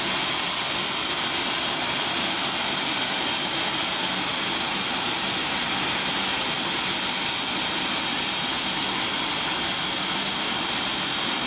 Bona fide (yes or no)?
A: yes